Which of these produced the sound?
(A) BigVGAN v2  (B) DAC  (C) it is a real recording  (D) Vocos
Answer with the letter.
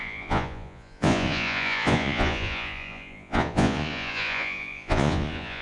D